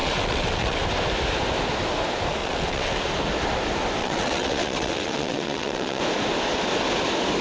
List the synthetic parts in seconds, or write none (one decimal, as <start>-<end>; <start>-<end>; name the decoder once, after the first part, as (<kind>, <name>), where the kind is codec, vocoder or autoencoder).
0.0-0.8 (vocoder, WaveNeXt); 2.4-3.0; 4.0-6.0